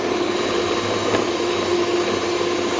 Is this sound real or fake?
real